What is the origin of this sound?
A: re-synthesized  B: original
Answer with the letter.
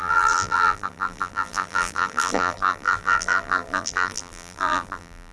A